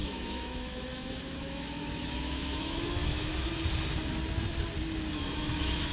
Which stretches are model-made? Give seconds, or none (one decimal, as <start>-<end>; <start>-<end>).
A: 0.0-3.3; 5.1-5.9